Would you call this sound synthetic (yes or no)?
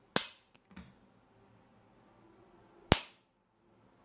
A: no